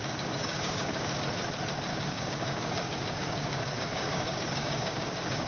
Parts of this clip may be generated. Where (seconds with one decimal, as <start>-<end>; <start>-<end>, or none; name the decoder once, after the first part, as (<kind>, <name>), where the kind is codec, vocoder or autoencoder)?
0.0-1.2 (codec, DAC); 1.9-5.5